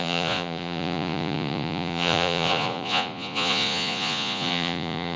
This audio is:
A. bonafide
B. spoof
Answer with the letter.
B